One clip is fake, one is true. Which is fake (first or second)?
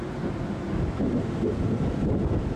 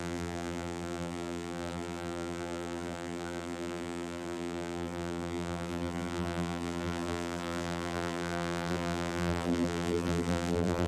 second